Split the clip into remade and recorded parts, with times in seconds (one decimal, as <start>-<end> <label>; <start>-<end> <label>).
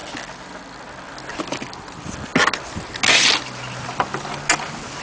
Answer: 0.0-5.0 recorded